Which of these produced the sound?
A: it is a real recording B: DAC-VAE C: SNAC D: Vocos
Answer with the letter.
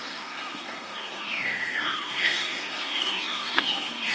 C